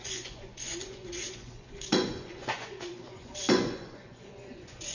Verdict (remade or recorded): remade